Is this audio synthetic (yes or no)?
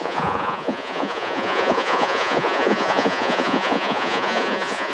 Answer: yes